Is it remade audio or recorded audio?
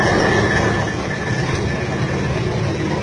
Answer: recorded